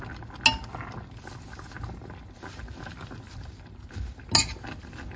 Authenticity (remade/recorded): recorded